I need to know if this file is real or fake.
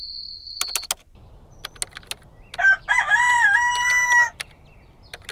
real